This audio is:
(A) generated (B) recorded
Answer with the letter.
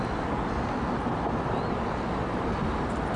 B